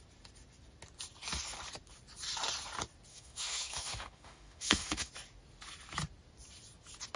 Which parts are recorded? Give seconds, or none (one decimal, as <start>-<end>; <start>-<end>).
0.0-3.1; 5.1-7.2